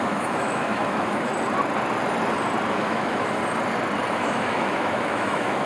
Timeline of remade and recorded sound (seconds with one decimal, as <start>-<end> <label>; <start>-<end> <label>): 0.0-1.3 remade; 1.3-2.7 recorded; 2.7-3.4 remade; 3.4-4.1 recorded; 4.1-5.7 remade

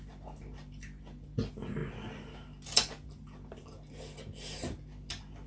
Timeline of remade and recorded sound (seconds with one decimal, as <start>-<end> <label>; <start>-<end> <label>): 0.0-5.5 recorded

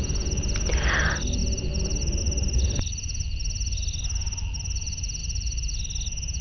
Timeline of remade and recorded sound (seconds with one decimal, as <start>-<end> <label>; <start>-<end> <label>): 0.0-6.4 recorded